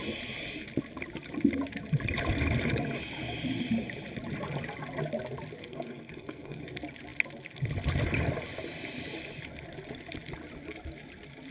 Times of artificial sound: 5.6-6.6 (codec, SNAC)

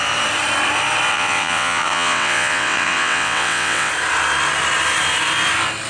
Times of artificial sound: 1.1-3.9 (vocoder, WaveNeXt)

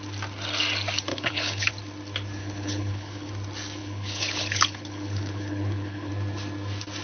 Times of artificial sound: 1.1-1.7 (codec, HILCodec); 2.4-3.3; 3.8-6.1

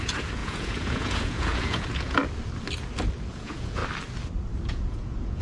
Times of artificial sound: 0.0-2.2 (vocoder, Vocos); 3.3-3.8; 4.7-5.4

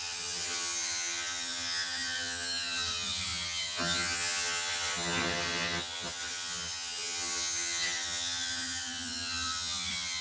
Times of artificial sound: 0.0-10.2 (vocoder, HiFi-GAN)

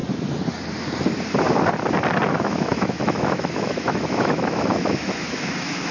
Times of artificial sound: 2.3-5.9 (autoencoder, DAC-VAE)